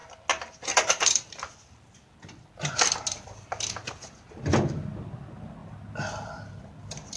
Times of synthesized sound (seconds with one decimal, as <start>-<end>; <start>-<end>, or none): none